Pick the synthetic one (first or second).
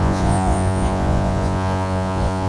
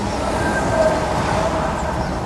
first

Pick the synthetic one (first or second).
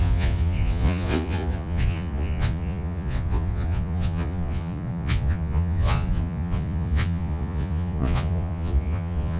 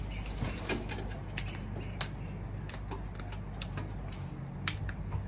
first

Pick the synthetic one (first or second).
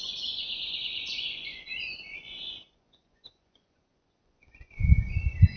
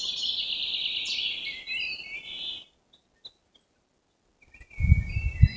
first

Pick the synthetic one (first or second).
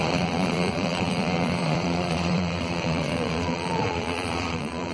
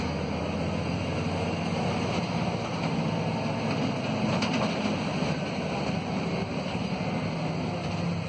first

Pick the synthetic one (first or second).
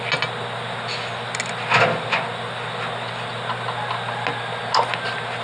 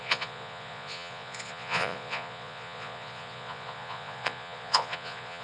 second